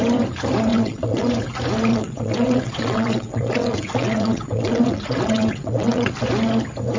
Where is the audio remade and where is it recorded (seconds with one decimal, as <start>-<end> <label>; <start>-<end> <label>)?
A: 0.0-0.7 recorded; 0.7-1.3 remade; 1.3-1.9 recorded; 1.9-6.1 remade; 6.1-7.0 recorded